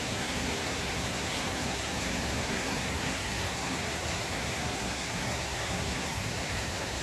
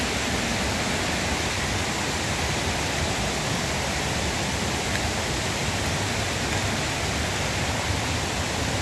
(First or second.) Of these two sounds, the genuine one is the second